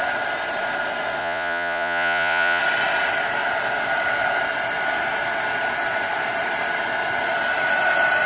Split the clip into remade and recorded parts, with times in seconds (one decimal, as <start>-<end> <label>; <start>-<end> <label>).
0.0-1.2 recorded; 1.2-2.6 remade; 2.6-8.3 recorded